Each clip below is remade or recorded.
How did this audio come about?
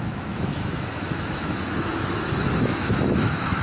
remade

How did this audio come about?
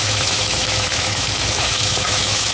remade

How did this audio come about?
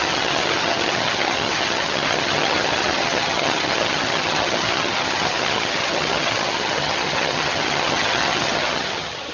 remade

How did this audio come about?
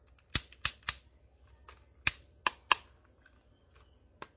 recorded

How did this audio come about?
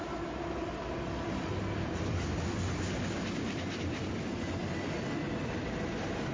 recorded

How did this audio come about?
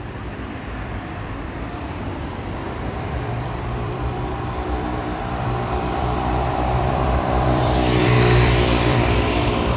remade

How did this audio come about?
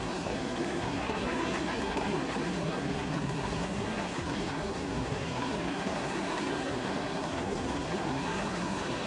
remade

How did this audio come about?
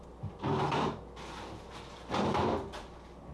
recorded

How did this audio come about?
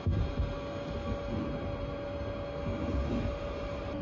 recorded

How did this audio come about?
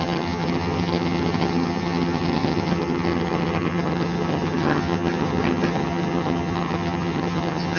remade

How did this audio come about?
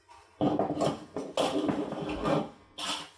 recorded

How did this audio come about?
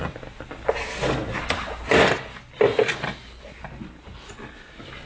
recorded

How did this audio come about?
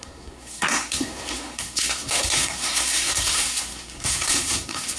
remade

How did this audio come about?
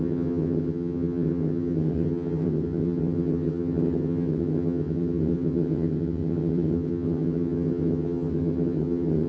remade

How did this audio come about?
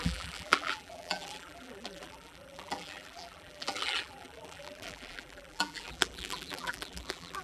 remade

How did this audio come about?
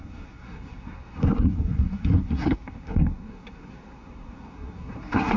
remade